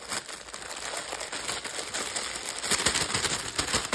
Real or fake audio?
real